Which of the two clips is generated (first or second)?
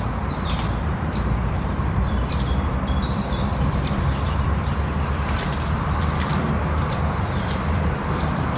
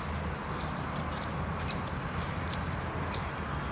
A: first